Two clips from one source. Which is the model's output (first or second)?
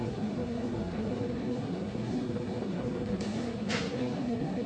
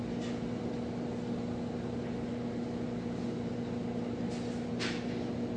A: first